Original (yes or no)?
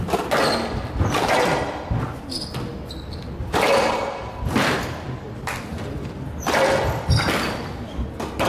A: yes